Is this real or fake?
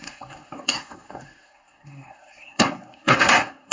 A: fake